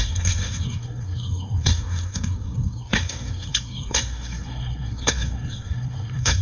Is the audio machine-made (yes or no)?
yes